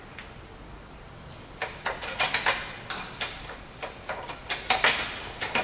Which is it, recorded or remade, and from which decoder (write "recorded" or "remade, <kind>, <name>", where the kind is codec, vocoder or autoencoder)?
recorded